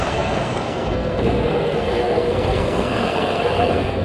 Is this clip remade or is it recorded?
remade